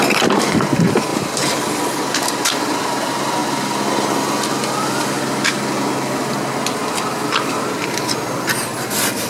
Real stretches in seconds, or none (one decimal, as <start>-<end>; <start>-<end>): 0.0-1.1; 1.6-6.8; 8.0-9.3